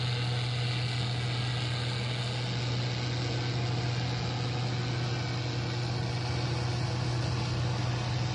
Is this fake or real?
real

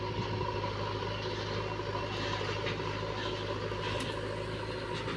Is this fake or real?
real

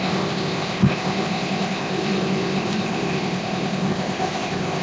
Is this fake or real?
fake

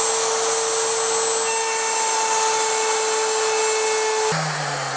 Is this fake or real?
real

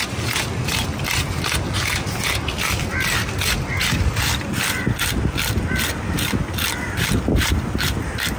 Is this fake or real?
real